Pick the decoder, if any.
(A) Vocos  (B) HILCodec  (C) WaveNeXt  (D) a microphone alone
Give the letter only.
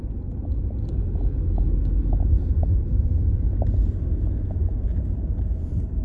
D